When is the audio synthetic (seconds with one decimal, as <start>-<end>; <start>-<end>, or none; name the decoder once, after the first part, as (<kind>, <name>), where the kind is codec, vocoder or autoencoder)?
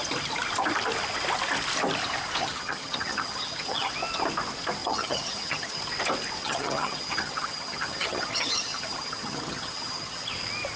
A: 2.4-3.9 (vocoder, HiFi-GAN); 4.8-5.8; 6.4-10.3